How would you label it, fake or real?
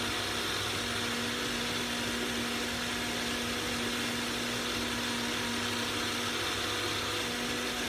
real